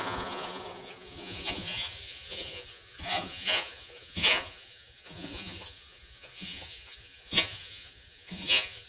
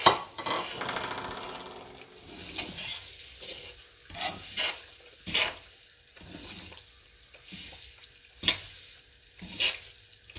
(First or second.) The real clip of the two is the second